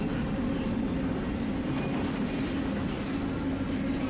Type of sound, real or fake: real